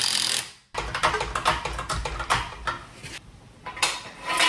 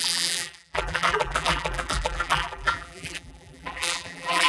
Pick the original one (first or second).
first